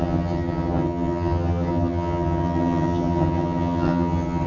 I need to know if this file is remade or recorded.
remade